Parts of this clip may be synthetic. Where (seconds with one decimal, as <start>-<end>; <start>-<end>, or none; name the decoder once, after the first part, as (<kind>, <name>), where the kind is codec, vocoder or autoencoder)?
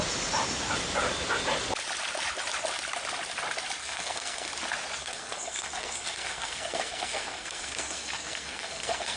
3.8-4.5 (codec, SNAC); 5.0-9.2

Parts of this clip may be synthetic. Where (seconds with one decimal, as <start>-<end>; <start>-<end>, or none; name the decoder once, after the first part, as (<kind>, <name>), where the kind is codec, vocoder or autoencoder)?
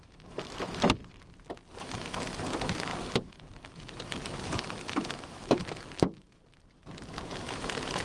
0.0-1.0 (autoencoder, DAC-VAE); 1.8-6.4; 7.4-8.0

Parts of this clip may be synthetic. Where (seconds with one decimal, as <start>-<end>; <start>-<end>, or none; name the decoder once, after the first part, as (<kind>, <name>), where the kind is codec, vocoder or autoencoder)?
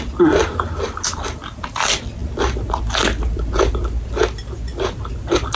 none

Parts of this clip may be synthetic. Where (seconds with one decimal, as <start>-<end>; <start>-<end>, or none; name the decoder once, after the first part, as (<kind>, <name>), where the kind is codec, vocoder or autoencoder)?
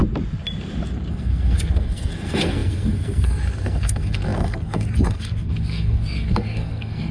1.1-7.1 (codec, SNAC)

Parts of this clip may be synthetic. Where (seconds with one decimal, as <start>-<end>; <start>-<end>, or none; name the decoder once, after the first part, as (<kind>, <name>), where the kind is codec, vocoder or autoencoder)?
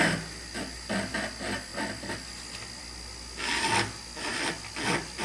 none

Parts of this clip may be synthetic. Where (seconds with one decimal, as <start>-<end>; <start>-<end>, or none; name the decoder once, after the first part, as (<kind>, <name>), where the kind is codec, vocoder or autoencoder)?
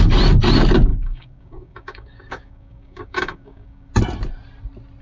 0.9-3.9 (codec, DAC)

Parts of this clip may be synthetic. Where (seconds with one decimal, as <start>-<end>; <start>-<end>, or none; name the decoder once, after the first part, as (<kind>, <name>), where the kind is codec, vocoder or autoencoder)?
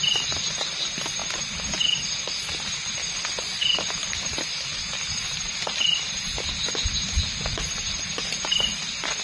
none